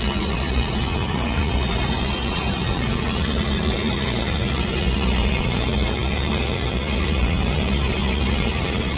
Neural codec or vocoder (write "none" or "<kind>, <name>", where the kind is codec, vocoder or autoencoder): vocoder, Vocos